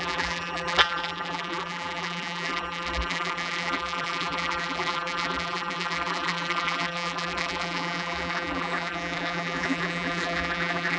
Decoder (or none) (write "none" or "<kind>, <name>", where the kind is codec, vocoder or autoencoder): vocoder, BigVGAN v2